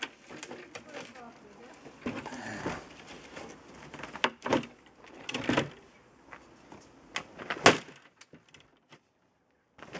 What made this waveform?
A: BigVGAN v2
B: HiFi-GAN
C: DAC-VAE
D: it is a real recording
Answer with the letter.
D